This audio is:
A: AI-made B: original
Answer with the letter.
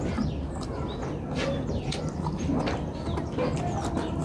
B